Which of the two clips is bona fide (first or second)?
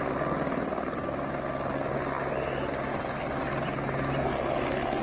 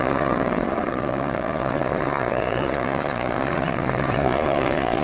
first